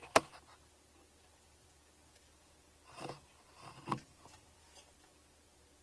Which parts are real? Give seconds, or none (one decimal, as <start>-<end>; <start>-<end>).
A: 0.0-5.8